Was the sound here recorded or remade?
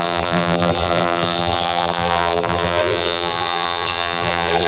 remade